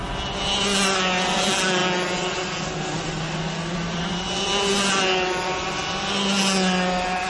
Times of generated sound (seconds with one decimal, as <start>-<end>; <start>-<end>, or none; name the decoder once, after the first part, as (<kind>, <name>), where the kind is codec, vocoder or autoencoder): none